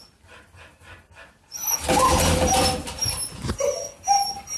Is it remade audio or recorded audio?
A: recorded